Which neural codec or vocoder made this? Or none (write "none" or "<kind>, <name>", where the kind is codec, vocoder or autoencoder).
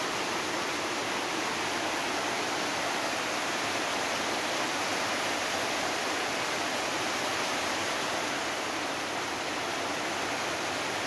none